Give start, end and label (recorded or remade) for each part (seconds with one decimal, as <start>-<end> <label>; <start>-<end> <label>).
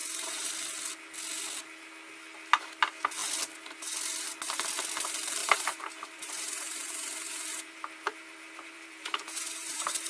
0.0-0.5 remade; 0.5-5.4 recorded; 5.4-10.1 remade